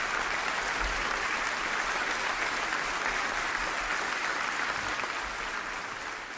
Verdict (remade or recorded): recorded